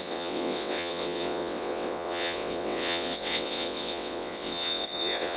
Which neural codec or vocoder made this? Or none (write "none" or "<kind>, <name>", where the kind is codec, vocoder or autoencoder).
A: vocoder, WaveNeXt